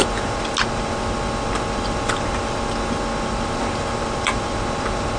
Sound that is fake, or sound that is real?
real